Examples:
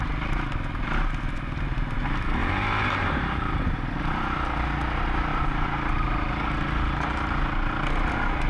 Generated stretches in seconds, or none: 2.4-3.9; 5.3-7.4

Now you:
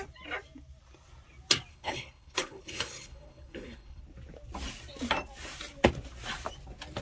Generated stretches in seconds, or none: 1.7-4.0

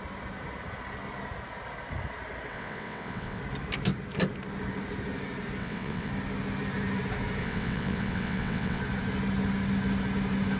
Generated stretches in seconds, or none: 2.5-3.4; 5.6-6.1; 7.4-8.8

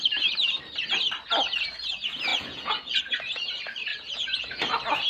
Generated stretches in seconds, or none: 2.3-3.0; 3.9-4.4

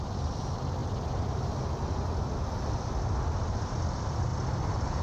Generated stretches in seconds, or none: none

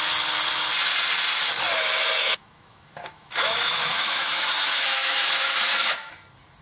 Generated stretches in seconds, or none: 2.2-6.1

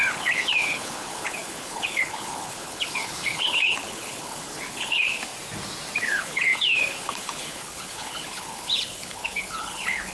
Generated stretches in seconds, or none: 0.0-5.3; 6.0-10.1

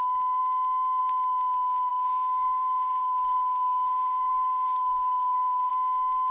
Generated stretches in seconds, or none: 1.9-5.7